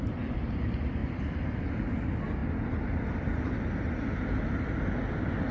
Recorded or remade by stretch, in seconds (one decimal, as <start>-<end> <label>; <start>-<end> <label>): 0.0-5.5 recorded